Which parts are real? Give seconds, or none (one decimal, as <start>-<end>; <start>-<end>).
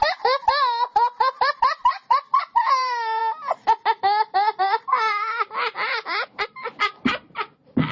0.0-1.4; 3.2-4.6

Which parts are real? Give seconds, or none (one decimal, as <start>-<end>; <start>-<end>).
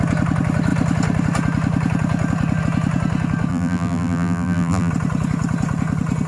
0.0-3.5; 4.9-6.3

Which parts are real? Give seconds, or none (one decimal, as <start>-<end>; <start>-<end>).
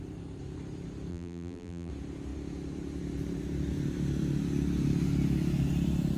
0.0-1.1; 1.9-6.2